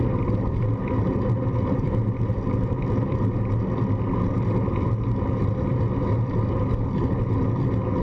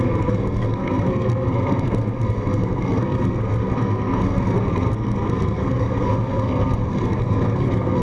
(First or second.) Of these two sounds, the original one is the first